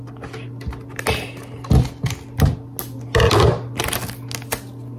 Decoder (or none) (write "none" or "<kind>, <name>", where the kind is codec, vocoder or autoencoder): none